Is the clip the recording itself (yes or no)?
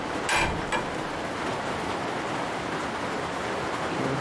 yes